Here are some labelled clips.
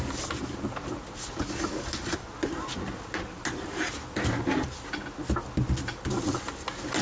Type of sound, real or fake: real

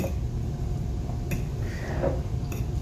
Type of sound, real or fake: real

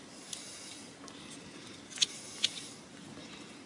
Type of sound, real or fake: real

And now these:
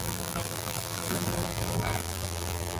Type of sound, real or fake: fake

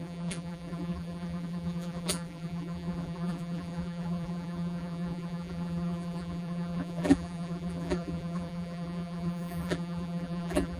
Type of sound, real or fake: fake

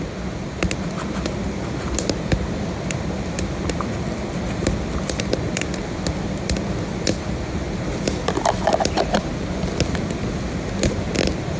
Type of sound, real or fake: real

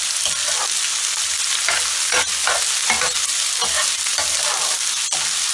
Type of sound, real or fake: real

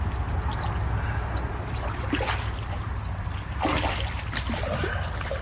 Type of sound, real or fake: real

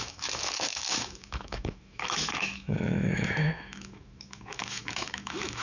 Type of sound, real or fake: fake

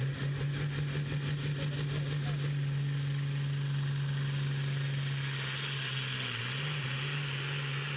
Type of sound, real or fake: real